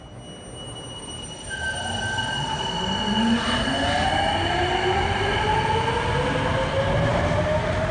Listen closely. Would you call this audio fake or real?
real